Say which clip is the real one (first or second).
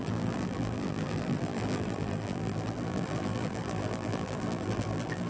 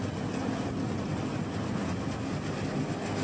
second